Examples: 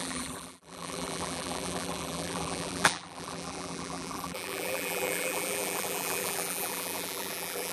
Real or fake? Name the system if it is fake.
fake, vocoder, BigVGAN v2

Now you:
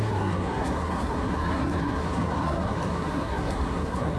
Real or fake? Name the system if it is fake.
fake, codec, SNAC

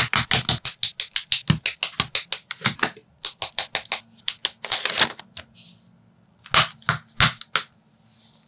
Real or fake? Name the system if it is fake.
real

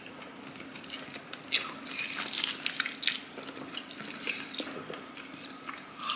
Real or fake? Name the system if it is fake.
real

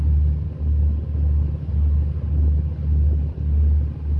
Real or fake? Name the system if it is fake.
real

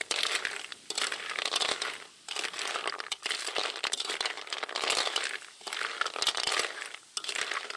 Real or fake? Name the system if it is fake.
real